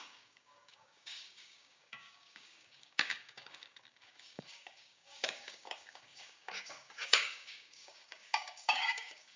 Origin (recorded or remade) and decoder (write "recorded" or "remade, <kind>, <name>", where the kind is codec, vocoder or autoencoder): remade, codec, DAC